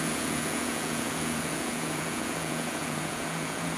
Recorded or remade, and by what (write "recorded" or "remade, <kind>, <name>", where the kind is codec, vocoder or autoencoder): remade, vocoder, Vocos